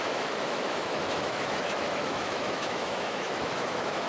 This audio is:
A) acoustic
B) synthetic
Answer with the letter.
B